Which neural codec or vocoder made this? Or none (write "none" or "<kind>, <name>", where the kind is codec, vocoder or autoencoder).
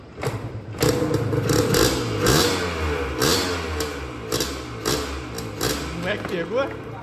none